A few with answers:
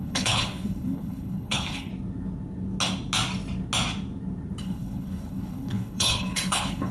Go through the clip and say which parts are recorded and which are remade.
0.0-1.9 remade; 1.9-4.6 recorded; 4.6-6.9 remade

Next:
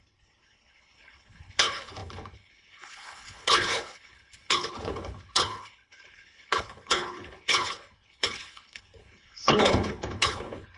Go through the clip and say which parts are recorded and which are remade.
0.0-10.8 remade

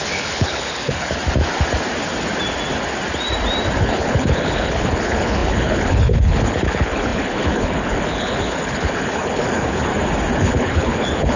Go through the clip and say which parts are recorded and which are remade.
0.0-1.2 remade; 1.2-3.8 recorded; 3.8-9.9 remade; 9.9-10.4 recorded; 10.4-11.4 remade

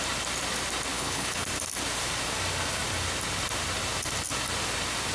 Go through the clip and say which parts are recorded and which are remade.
0.0-0.9 recorded; 0.9-1.5 remade; 1.5-5.1 recorded

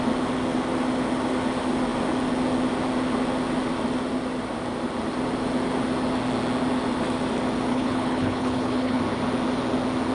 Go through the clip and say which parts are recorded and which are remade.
0.0-7.7 recorded; 7.7-9.0 remade; 9.0-10.1 recorded

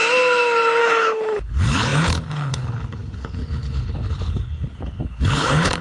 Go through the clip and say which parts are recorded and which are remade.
0.0-0.8 recorded; 0.8-5.8 remade

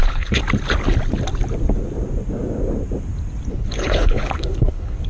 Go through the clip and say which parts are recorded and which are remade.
0.0-0.4 remade; 0.4-3.5 recorded; 3.5-5.1 remade